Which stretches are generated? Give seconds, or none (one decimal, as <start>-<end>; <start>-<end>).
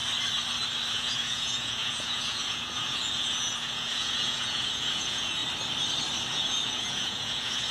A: 0.9-5.4; 6.3-7.7